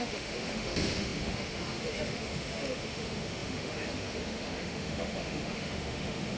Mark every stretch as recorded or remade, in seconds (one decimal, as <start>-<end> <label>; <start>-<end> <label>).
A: 0.0-6.4 remade